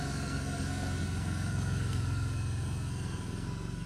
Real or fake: fake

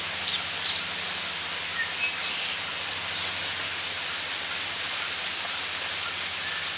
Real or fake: real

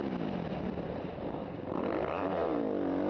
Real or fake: real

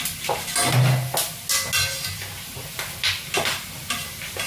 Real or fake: real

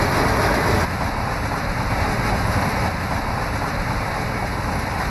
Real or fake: real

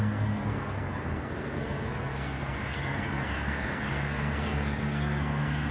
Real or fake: fake